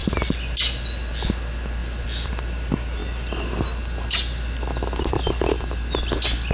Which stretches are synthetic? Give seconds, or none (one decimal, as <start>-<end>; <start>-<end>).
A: 1.8-2.3